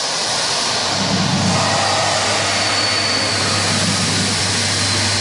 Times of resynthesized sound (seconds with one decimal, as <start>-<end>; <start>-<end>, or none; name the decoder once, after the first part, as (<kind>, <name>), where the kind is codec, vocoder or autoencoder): none